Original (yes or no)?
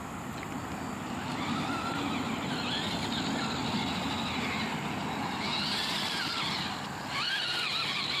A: yes